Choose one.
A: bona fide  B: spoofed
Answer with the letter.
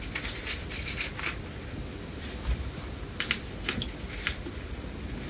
A